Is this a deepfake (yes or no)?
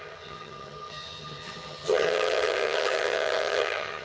yes